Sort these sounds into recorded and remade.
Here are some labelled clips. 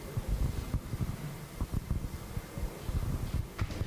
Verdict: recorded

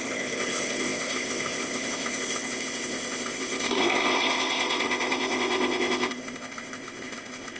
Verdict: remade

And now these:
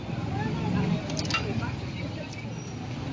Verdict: recorded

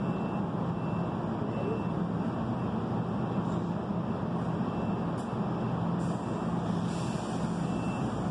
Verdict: recorded